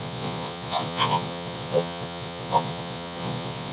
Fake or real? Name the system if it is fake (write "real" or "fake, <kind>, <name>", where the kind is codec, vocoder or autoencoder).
fake, vocoder, Vocos